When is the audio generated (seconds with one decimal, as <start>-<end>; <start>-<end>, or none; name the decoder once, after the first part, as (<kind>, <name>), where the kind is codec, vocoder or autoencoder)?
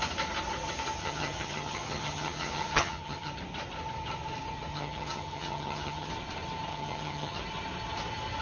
1.0-3.3 (vocoder, HiFi-GAN); 4.7-6.1; 6.7-7.4